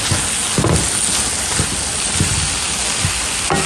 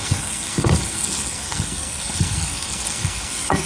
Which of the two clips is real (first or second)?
first